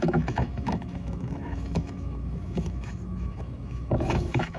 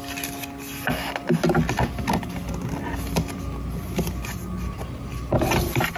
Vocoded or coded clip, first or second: first